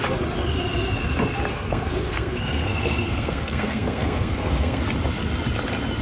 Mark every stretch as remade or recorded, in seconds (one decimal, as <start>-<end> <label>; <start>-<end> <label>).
0.0-1.5 recorded; 1.5-4.8 remade; 4.8-6.0 recorded